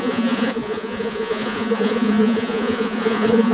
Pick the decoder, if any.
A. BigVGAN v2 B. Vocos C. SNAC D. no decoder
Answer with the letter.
B